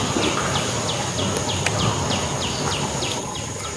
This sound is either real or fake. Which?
real